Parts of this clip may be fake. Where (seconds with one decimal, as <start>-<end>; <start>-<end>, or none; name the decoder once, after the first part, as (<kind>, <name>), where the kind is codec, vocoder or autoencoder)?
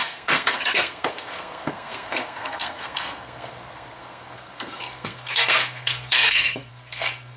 0.0-7.4 (codec, SNAC)